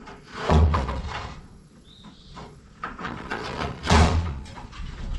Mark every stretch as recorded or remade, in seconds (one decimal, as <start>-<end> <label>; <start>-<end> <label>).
0.0-5.2 remade